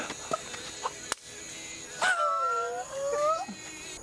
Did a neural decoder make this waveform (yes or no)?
no